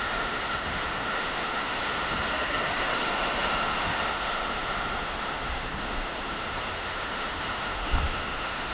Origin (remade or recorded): remade